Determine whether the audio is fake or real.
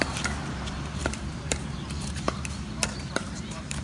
fake